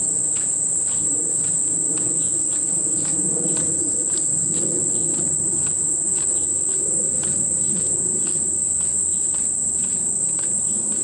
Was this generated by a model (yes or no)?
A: no